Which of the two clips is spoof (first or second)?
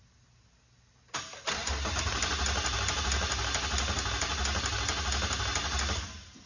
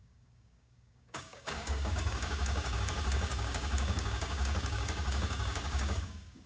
second